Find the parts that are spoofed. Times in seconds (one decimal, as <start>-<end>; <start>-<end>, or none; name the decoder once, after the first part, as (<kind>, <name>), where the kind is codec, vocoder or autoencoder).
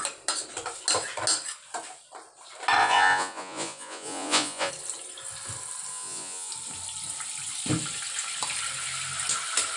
2.8-4.7 (vocoder, Vocos); 5.9-6.5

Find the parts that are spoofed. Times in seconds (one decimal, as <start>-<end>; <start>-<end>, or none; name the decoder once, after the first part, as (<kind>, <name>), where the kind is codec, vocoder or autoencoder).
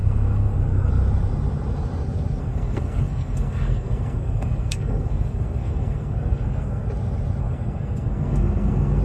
0.0-0.9 (codec, SNAC); 2.4-6.9; 7.4-9.0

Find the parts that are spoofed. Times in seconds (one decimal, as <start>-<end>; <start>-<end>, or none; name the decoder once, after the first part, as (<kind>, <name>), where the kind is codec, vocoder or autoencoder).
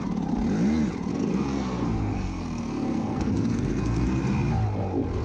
1.1-4.2 (codec, SNAC)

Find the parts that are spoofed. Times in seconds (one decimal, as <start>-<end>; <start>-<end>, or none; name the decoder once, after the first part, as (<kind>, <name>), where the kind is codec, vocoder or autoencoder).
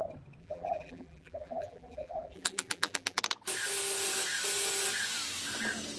0.4-3.2 (vocoder, BigVGAN v2)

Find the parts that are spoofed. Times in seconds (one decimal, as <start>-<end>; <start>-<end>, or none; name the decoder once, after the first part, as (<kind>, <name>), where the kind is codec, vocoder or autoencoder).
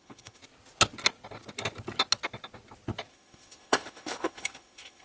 0.0-0.4 (autoencoder, DAC-VAE); 3.1-5.0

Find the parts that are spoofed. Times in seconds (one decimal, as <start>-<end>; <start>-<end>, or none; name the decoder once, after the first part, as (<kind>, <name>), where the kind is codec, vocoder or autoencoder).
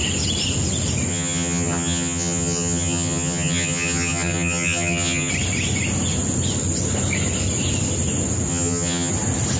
1.1-5.3 (vocoder, HiFi-GAN); 8.5-9.1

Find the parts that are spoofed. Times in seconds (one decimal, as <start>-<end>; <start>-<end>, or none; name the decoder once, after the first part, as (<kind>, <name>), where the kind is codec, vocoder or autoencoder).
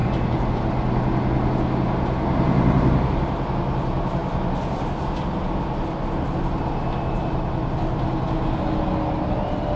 0.0-0.6 (vocoder, BigVGAN v2)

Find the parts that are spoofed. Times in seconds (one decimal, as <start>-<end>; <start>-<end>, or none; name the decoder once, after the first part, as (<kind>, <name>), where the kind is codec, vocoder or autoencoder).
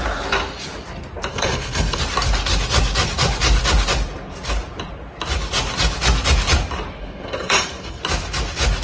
1.3-2.0 (codec, SNAC); 7.0-8.0